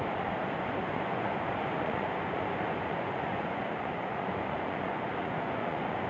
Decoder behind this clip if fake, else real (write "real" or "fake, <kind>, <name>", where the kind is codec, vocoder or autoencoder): fake, vocoder, Vocos